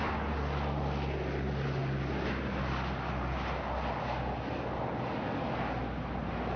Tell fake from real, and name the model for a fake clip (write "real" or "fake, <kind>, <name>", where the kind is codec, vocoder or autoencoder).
real